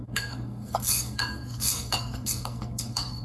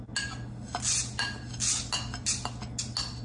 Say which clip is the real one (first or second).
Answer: second